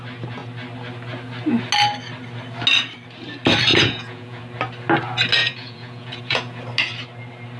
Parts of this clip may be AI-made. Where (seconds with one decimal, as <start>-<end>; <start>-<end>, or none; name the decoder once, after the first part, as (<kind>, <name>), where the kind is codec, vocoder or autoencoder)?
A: 3.7-4.4 (vocoder, Vocos); 5.4-6.6